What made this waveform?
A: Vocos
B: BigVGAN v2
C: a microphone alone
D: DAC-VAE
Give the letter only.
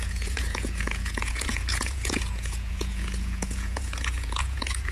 A